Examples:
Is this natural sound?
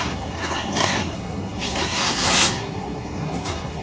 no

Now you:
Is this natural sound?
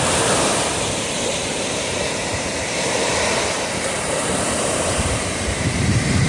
no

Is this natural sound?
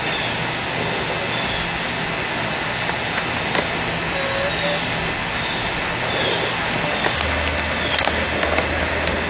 yes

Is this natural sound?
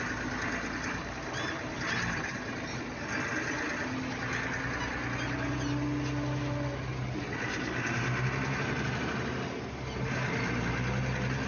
yes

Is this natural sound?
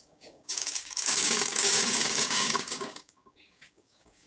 no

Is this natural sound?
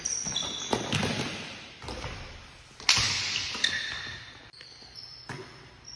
yes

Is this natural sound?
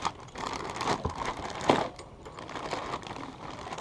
yes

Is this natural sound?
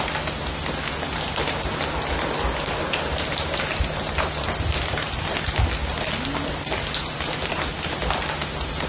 yes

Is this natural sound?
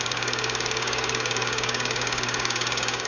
no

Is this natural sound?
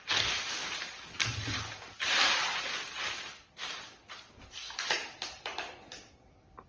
yes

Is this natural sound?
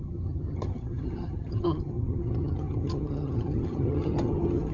no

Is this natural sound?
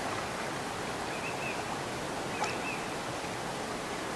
yes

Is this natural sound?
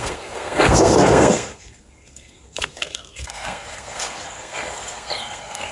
no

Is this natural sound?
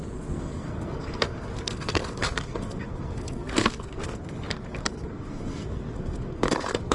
no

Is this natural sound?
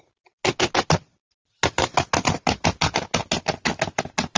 yes